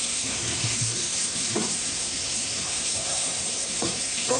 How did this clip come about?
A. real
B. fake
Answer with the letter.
B